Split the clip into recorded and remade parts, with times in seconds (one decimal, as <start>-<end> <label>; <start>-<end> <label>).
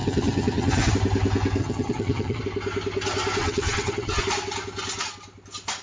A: 0.0-0.9 remade; 0.9-1.6 recorded; 1.6-2.4 remade; 2.4-3.4 recorded; 3.4-4.2 remade; 4.2-5.8 recorded